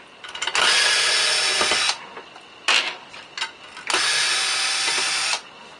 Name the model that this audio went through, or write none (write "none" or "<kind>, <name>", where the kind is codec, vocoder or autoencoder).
none